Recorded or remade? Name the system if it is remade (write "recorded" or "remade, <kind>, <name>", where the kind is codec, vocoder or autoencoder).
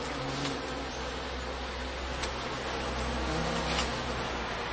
recorded